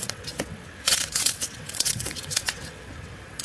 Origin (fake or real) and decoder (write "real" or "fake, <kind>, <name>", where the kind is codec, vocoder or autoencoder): fake, vocoder, WaveNeXt